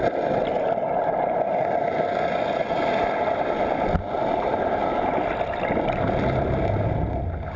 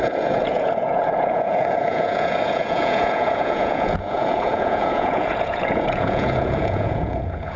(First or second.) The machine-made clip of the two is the second